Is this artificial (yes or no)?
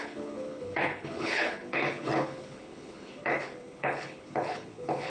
yes